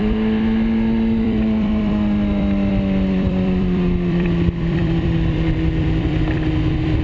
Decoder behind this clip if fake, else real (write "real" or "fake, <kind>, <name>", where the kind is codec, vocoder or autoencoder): fake, vocoder, BigVGAN v2